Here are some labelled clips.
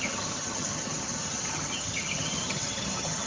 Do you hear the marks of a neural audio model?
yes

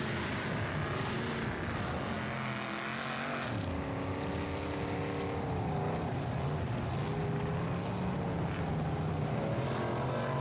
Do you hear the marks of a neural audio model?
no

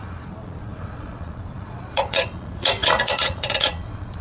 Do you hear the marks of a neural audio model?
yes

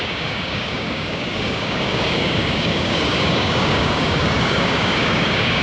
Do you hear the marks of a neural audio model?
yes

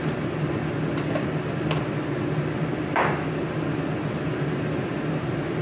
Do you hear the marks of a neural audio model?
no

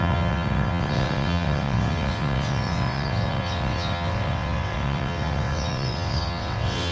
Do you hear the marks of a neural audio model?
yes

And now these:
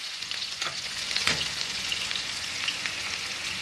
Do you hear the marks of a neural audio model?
yes